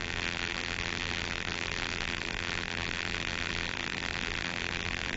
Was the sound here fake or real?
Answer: fake